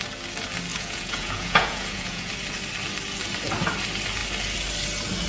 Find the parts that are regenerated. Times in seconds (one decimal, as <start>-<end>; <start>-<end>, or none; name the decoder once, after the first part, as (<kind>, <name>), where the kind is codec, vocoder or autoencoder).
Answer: 0.7-2.3 (vocoder, Vocos)